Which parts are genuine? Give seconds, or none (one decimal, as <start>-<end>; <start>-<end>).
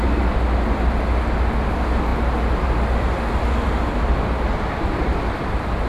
0.0-5.9